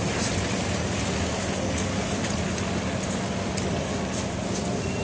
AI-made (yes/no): no